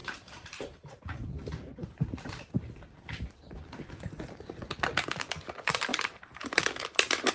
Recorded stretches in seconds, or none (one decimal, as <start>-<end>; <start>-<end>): 4.4-5.9